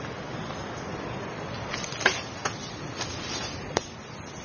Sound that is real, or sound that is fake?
fake